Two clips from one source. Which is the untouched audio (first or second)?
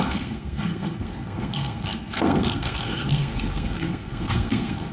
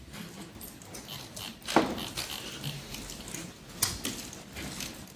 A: second